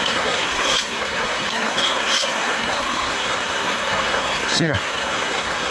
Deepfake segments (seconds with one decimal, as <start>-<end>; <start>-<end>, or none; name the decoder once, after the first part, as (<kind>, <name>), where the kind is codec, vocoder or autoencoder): 0.0-5.7 (codec, SNAC)